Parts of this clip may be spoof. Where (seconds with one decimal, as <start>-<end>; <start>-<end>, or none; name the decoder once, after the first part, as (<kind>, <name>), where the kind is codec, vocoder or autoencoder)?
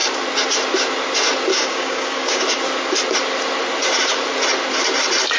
1.5-2.4 (codec, DAC)